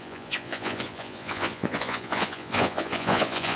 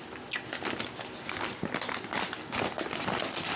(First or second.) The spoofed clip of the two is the first